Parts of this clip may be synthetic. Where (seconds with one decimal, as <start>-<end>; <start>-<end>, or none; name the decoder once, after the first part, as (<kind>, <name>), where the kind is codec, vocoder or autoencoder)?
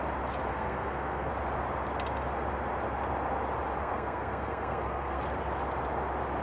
0.5-1.3 (codec, SNAC); 3.8-5.2